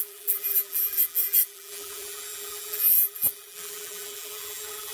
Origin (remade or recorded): remade